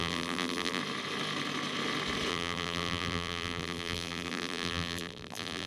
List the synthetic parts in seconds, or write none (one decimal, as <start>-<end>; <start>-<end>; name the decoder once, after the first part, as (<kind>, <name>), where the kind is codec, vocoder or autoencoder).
0.0-0.8 (vocoder, BigVGAN v2); 2.3-5.7